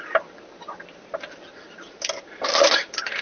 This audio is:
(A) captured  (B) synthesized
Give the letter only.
A